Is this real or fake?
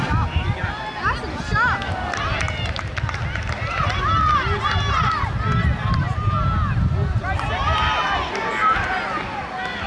real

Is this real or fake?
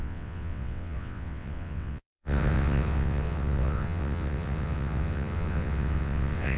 fake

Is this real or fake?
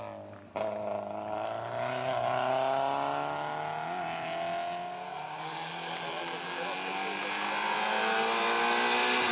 real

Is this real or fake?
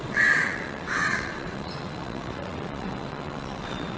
fake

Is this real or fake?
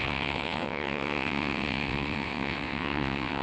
fake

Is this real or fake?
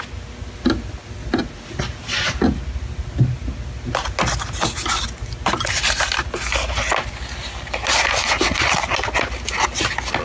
real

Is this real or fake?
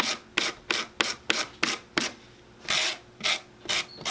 real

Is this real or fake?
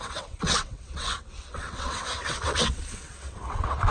fake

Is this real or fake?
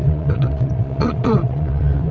fake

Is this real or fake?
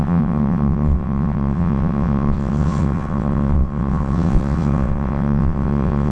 fake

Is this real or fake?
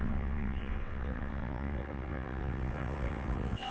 fake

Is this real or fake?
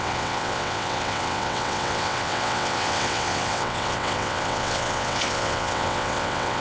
fake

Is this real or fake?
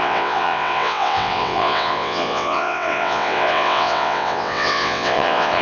fake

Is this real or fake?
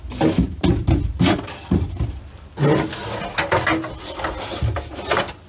real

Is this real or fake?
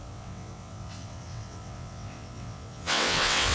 fake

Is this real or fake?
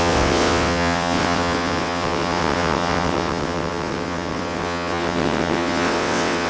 fake